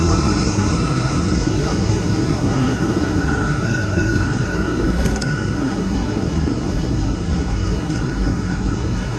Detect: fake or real fake